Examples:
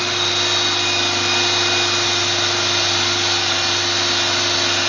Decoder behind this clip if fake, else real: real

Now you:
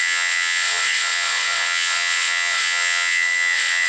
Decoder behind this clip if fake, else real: fake, vocoder, WaveNeXt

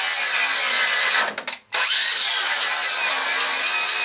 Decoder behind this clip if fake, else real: real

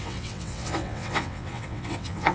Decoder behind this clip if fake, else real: fake, vocoder, WaveNeXt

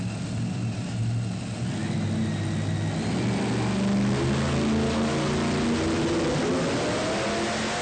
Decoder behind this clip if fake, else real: real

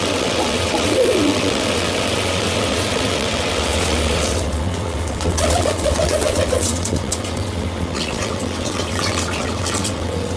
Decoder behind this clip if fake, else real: fake, vocoder, WaveNeXt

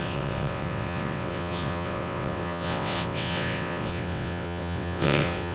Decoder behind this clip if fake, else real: fake, vocoder, WaveNeXt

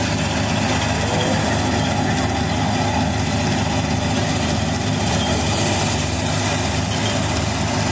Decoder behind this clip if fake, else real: real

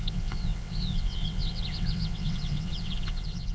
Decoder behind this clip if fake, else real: fake, vocoder, WaveNeXt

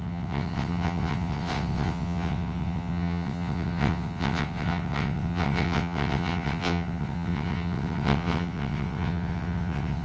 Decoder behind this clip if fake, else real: fake, vocoder, WaveNeXt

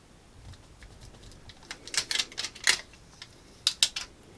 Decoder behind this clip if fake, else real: real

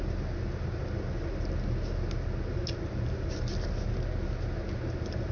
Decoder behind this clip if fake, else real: real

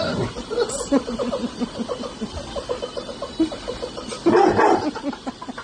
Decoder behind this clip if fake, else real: real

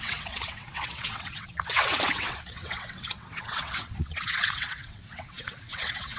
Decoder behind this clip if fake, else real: fake, vocoder, WaveNeXt